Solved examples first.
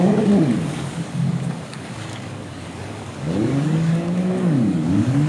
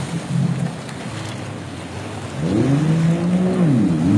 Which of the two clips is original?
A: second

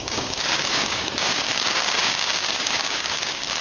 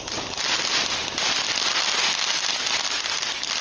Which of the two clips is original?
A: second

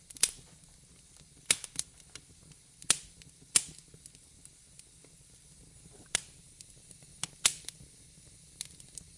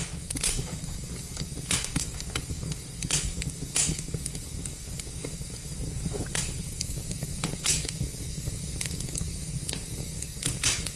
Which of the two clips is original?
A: first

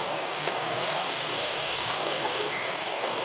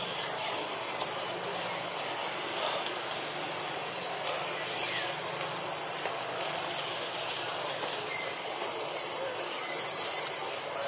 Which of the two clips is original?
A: second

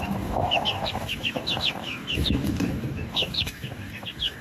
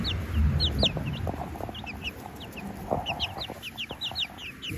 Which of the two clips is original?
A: second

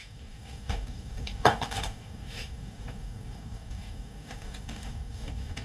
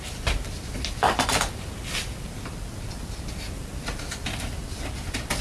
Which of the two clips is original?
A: second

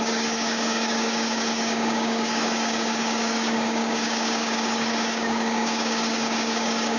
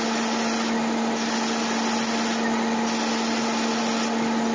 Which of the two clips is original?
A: second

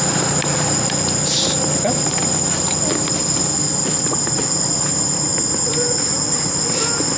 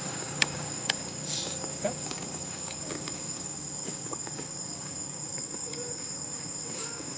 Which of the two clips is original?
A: first